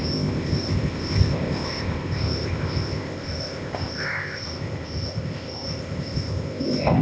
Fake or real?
fake